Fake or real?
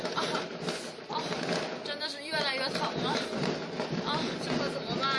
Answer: real